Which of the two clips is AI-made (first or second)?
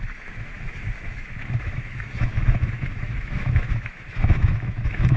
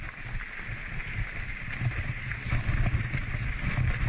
first